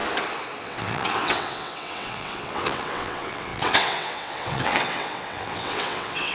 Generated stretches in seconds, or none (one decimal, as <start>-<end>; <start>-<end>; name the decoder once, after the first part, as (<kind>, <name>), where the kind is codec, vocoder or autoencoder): 0.6-6.3 (vocoder, WaveNeXt)